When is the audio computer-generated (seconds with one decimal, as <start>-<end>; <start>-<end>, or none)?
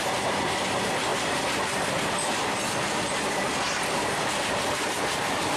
none